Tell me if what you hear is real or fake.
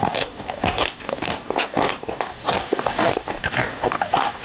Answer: fake